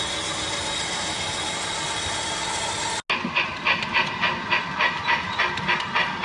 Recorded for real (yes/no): yes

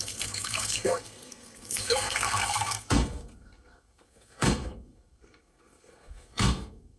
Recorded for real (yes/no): no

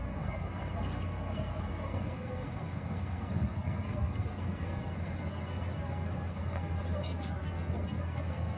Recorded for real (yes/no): no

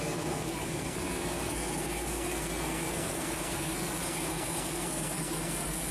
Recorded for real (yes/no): no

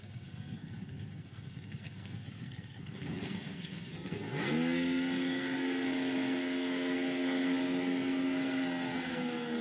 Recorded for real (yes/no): no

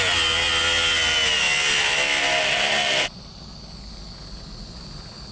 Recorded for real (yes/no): yes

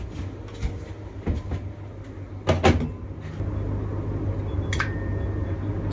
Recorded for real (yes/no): yes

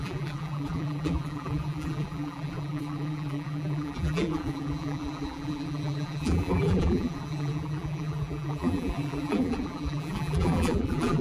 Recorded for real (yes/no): no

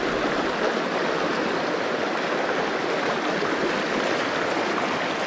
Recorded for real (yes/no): yes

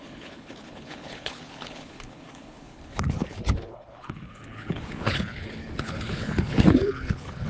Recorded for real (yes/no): no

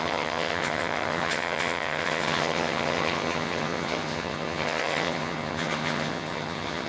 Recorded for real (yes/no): no